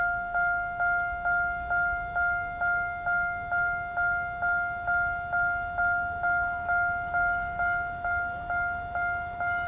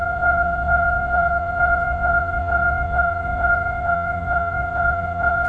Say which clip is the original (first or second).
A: first